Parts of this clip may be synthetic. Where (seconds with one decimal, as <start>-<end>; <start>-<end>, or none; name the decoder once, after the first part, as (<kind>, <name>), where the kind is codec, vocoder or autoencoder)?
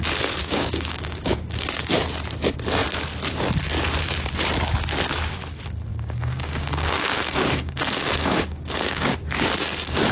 0.4-1.9 (codec, DAC); 5.9-9.1